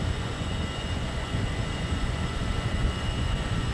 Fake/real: fake